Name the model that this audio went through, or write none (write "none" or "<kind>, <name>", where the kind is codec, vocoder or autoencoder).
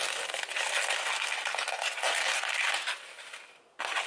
none